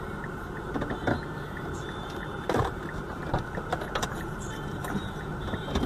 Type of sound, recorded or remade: remade